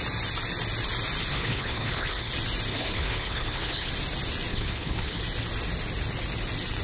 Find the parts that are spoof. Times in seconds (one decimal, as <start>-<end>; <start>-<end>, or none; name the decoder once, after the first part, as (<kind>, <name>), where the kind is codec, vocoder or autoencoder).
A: 1.3-2.3 (codec, HILCodec); 2.7-3.9; 4.5-5.2